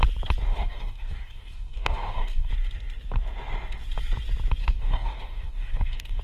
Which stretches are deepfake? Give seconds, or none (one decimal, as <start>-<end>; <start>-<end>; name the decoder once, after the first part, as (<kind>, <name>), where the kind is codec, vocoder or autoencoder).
0.5-2.5 (codec, DAC); 4.6-6.2